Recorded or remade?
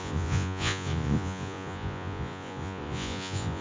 remade